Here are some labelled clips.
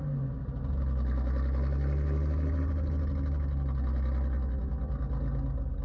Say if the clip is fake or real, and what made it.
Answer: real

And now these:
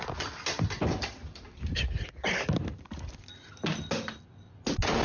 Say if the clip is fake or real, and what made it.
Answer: real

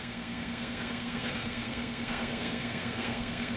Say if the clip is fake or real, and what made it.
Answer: fake, codec, SNAC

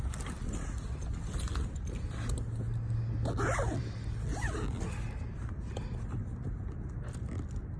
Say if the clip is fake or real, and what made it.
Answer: real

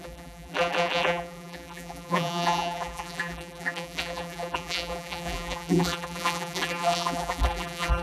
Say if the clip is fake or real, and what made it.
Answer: fake, vocoder, BigVGAN v2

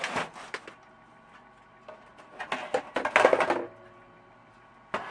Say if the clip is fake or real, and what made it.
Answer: real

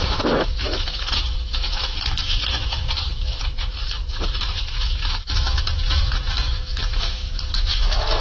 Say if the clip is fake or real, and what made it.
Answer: fake, autoencoder, DAC-VAE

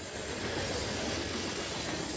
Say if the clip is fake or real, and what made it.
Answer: real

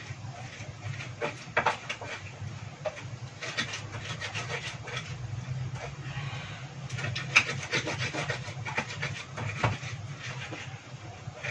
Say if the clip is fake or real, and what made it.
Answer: real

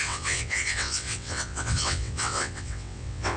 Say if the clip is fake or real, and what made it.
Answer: fake, vocoder, WaveNeXt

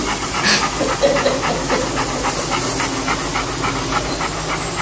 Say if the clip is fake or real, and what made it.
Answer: real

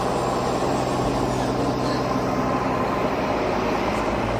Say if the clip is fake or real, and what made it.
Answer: real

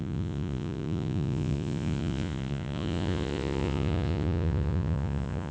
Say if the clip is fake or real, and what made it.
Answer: fake, vocoder, Vocos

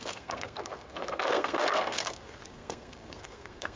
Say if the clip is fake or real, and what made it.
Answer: fake, codec, SNAC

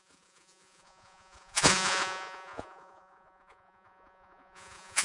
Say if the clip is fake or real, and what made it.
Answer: fake, vocoder, Vocos